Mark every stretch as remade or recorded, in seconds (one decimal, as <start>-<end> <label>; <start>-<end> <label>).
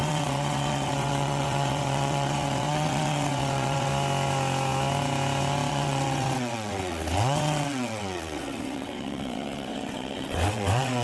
0.0-3.9 remade; 3.9-5.7 recorded; 5.7-11.0 remade